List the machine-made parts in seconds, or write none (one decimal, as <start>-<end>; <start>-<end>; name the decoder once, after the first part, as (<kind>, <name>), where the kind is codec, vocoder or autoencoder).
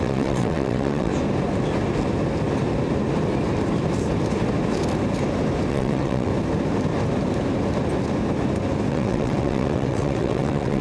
0.0-1.1 (vocoder, WaveNeXt); 5.7-6.3; 8.9-10.8